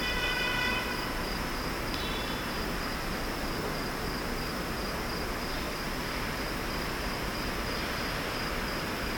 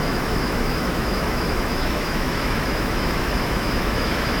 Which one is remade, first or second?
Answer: second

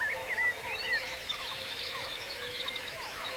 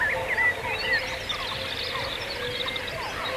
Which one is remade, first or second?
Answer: first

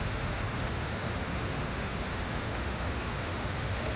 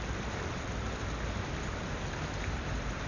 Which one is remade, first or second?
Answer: first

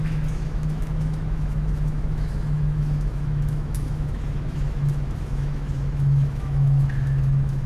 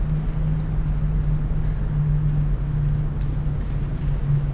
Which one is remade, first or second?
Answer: first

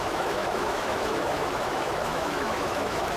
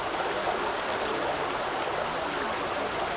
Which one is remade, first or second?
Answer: first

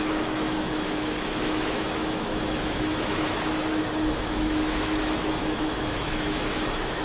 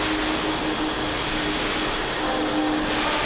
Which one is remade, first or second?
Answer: first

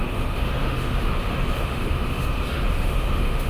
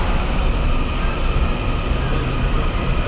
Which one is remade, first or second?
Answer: first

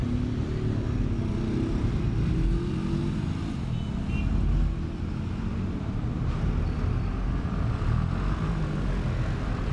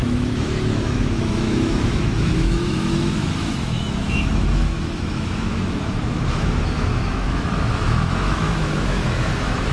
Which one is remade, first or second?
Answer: second